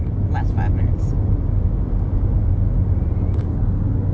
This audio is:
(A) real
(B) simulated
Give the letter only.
A